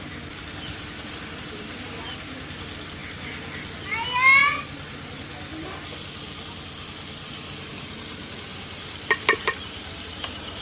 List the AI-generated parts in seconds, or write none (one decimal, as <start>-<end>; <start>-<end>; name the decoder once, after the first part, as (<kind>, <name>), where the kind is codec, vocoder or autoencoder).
none